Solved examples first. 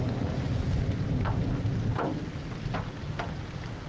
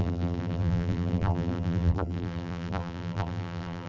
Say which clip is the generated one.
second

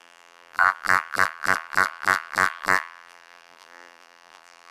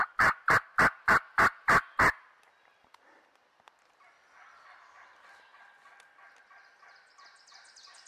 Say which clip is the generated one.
first